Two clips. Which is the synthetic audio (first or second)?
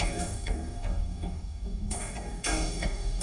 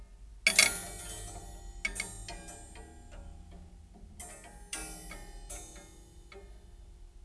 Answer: first